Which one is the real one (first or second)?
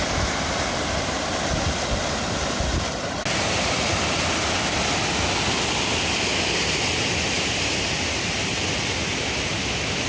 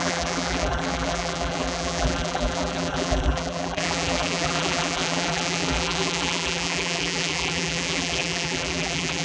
first